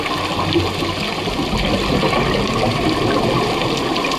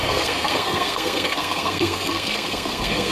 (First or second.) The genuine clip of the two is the first